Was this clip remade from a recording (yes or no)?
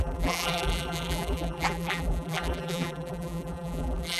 yes